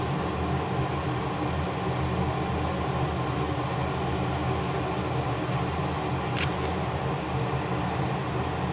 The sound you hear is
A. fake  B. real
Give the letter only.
B